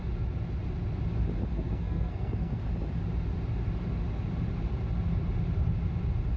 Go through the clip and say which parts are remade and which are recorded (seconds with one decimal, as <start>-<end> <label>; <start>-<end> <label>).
0.0-1.5 recorded; 1.5-2.6 remade; 2.6-6.4 recorded